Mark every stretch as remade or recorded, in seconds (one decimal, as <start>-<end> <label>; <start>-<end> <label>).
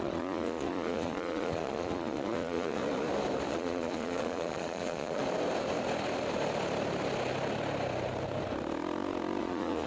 0.0-2.8 remade; 2.8-3.5 recorded; 3.5-5.2 remade; 5.2-9.4 recorded; 9.4-9.9 remade